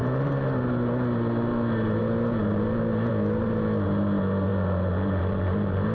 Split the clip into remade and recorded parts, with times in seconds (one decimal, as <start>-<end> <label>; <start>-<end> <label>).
0.0-5.9 recorded